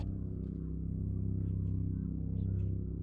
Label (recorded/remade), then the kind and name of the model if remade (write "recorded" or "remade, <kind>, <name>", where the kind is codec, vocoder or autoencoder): recorded